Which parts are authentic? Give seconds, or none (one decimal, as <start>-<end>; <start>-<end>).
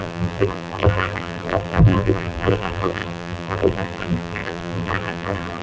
none